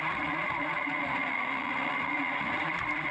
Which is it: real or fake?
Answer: fake